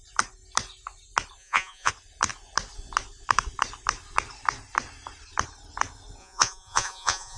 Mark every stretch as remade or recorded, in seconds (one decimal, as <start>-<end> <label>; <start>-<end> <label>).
0.0-1.4 recorded; 1.4-1.9 remade; 1.9-6.2 recorded; 6.2-7.4 remade